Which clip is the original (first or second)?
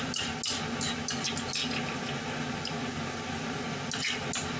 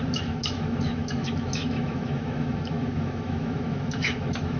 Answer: first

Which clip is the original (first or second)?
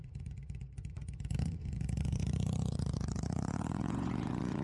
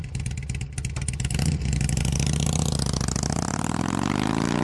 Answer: second